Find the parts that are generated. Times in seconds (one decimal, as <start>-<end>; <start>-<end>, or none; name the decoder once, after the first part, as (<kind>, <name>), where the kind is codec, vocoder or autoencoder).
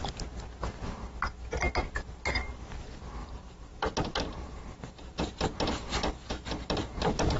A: 3.2-5.2 (vocoder, BigVGAN v2)